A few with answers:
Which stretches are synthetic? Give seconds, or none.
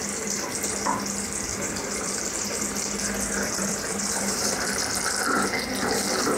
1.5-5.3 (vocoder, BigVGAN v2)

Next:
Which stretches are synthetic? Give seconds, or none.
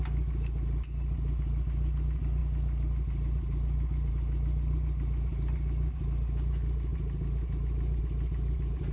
none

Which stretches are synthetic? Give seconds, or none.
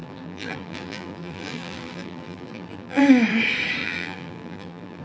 0.0-3.0 (vocoder, BigVGAN v2); 3.8-5.0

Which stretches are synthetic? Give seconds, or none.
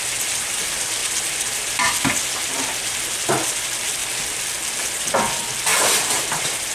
5.7-6.7 (vocoder, BigVGAN v2)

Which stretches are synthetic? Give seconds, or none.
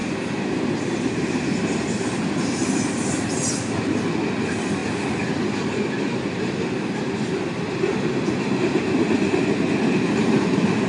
none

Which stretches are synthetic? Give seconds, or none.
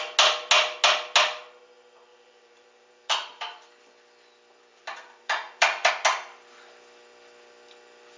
2.1-3.7 (vocoder, BigVGAN v2); 4.7-5.9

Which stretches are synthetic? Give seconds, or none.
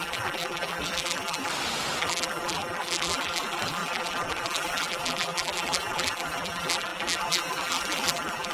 0.0-1.5 (vocoder, BigVGAN v2); 2.0-8.5